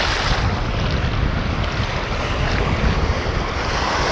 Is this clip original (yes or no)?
yes